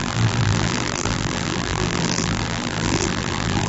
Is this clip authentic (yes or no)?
no